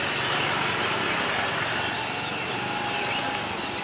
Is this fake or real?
real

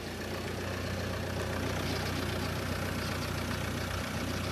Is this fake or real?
real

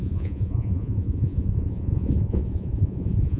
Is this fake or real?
fake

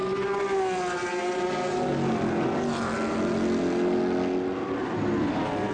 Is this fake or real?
real